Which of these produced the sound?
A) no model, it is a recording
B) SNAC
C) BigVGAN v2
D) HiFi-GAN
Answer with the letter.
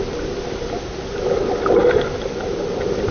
A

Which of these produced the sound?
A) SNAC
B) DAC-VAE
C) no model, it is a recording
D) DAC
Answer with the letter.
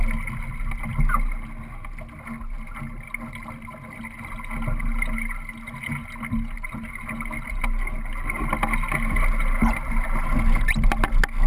C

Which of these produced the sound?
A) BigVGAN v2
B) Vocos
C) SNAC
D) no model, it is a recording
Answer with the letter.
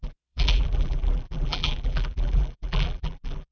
A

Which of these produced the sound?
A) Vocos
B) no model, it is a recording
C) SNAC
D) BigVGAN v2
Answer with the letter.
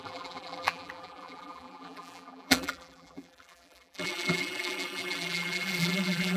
D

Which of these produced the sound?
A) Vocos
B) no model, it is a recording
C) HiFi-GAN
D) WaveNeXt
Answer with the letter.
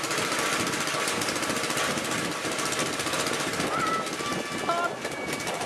B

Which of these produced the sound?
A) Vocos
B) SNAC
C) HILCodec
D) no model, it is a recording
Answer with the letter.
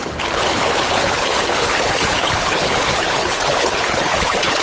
C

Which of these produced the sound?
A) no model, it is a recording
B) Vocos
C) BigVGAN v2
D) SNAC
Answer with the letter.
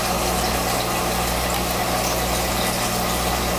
A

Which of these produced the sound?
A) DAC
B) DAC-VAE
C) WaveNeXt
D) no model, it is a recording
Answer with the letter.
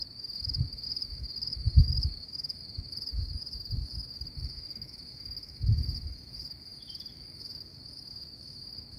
B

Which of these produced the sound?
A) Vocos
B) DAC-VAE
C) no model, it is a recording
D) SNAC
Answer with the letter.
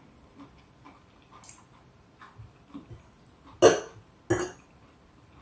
C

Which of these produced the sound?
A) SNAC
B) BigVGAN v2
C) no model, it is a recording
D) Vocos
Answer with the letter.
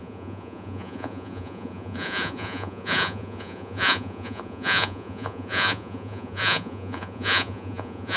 D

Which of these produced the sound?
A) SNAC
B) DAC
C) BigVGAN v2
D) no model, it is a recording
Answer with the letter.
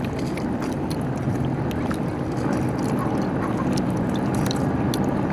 D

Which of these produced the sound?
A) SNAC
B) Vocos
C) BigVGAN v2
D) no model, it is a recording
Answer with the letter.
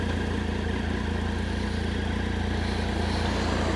D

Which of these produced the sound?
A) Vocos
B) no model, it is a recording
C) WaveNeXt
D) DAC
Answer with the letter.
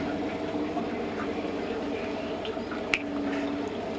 B